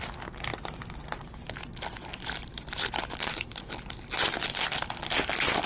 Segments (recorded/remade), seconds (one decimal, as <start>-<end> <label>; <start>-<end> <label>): 0.0-0.5 recorded; 0.5-1.5 remade; 1.5-2.1 recorded; 2.1-4.1 remade; 4.1-5.7 recorded